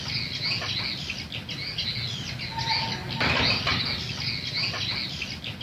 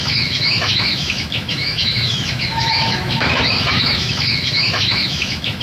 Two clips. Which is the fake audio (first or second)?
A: second